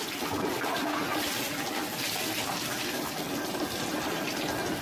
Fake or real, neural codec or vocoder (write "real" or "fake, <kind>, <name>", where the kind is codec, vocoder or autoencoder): real